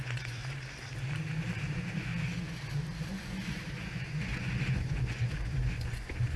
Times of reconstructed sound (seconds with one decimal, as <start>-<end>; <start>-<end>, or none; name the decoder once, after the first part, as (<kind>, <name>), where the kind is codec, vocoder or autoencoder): 0.0-0.4 (vocoder, Vocos); 1.7-2.1; 3.1-6.4